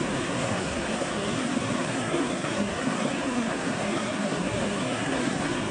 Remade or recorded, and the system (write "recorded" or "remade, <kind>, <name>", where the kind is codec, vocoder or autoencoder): remade, codec, SNAC